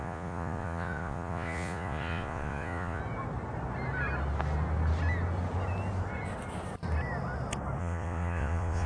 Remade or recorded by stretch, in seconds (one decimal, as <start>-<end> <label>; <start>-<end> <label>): 0.0-3.0 remade; 3.0-7.8 recorded; 7.8-8.9 remade